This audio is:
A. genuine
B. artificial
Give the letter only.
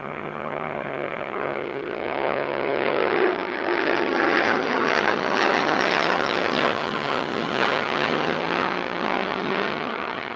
B